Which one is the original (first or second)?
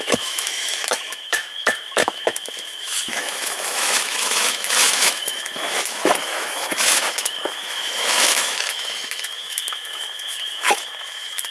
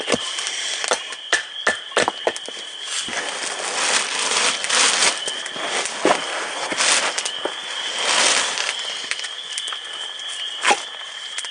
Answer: second